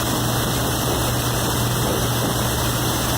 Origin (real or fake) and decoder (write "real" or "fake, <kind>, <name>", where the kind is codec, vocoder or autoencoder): real